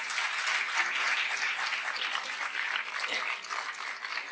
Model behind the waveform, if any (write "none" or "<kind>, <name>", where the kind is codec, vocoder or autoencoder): none